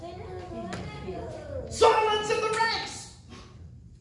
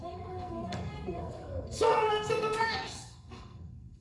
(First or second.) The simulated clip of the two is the second